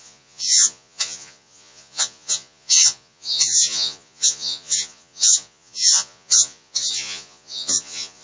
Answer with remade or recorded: remade